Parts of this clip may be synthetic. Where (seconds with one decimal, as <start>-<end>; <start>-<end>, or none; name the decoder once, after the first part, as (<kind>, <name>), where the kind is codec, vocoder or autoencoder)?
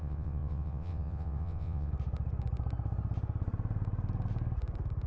0.0-1.9 (vocoder, WaveNeXt)